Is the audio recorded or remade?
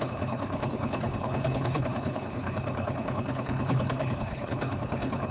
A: remade